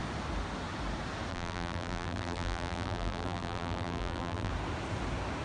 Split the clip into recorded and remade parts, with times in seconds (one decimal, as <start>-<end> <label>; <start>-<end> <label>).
0.0-1.3 recorded; 1.3-4.5 remade; 4.5-5.4 recorded